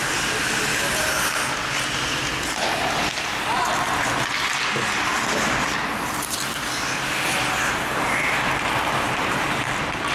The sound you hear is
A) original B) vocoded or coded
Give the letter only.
A